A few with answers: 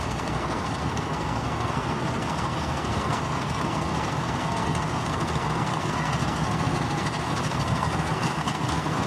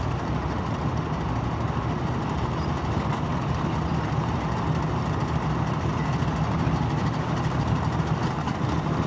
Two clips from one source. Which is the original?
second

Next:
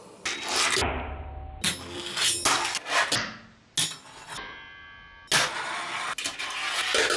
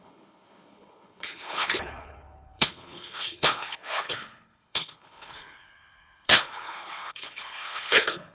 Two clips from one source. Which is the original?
first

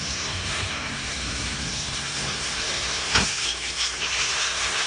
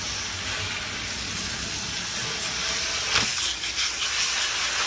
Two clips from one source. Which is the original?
second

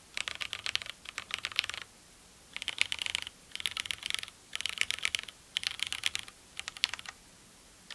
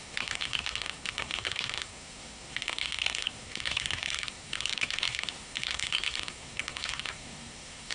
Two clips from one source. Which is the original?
first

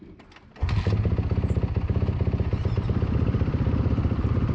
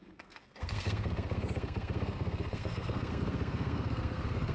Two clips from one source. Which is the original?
first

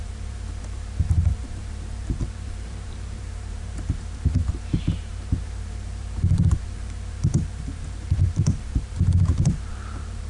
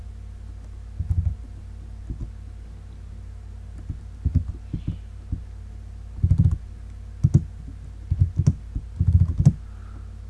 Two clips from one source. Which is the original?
second